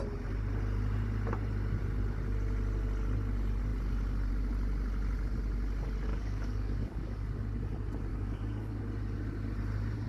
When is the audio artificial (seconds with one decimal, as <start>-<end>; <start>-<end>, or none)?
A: 6.1-7.3; 8.1-8.8